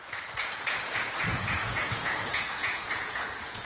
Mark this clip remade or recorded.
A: remade